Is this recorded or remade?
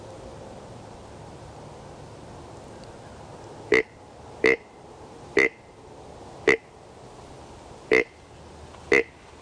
recorded